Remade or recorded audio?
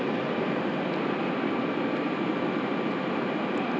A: recorded